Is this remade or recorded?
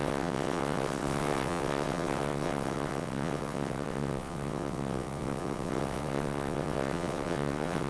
remade